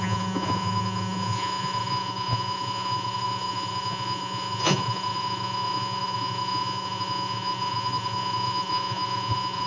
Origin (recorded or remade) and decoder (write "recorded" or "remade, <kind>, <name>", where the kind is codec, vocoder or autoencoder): remade, vocoder, Vocos